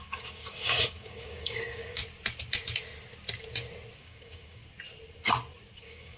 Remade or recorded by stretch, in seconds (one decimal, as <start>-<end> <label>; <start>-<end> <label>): 0.0-2.0 remade; 2.0-4.0 recorded; 4.0-4.6 remade; 4.6-5.8 recorded; 5.8-6.2 remade